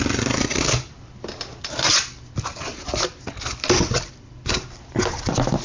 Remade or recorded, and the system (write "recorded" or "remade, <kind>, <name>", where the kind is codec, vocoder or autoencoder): recorded